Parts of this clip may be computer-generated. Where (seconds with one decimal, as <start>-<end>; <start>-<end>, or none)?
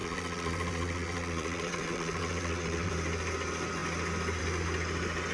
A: 0.0-2.9